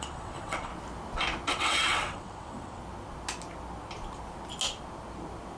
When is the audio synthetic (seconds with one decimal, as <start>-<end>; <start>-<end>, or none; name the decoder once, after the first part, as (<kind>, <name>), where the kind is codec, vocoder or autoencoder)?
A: 0.0-0.7 (vocoder, WaveNeXt); 1.5-2.8